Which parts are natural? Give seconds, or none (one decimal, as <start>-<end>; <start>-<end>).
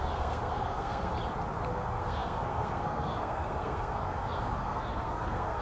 1.1-1.7